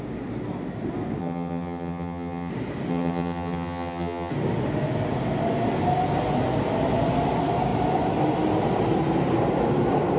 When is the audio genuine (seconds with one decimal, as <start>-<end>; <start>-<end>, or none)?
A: 0.0-1.2; 2.5-2.9; 4.3-10.2